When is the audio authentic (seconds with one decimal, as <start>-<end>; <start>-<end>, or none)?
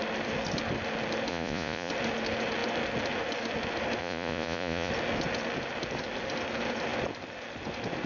0.0-1.3; 1.9-4.0; 4.9-8.1